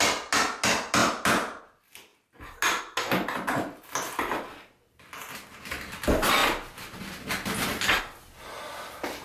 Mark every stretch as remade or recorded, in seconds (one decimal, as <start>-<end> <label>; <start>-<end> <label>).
0.0-9.2 recorded